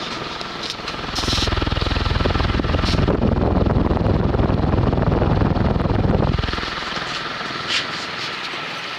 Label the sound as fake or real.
real